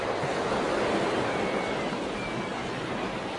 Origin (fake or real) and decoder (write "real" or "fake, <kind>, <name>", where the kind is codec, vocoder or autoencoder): real